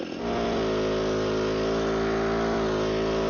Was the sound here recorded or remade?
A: recorded